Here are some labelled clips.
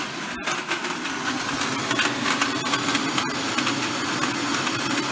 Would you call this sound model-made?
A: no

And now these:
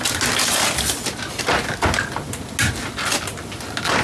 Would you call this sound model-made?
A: no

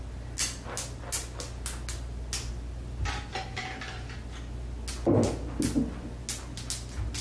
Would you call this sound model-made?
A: no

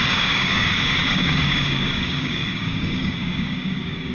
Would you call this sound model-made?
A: yes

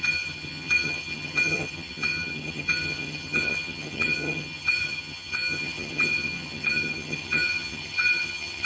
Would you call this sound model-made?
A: yes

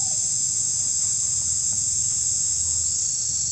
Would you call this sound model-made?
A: no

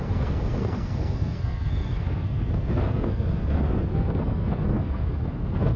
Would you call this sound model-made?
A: yes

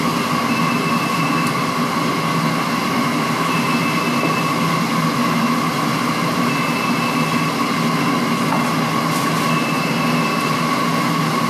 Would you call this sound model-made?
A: no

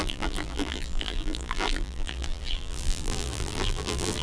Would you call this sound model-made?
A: yes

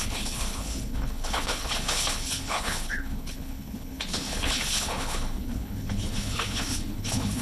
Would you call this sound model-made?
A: yes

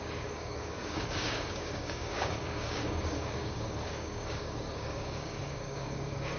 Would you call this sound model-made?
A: yes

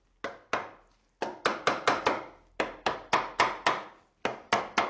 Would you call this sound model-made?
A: no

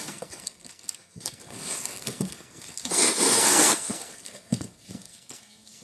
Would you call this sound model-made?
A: yes